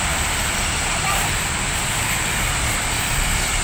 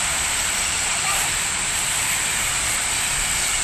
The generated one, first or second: second